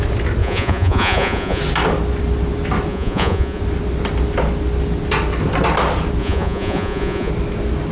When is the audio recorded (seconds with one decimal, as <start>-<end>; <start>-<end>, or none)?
0.0-0.4; 1.6-2.9; 3.6-6.2; 7.3-7.9